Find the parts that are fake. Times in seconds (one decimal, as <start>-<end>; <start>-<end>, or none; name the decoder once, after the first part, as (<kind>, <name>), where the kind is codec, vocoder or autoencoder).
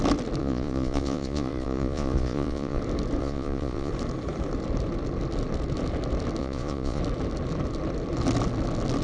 0.4-2.8 (vocoder, Vocos); 3.2-3.9; 6.4-7.0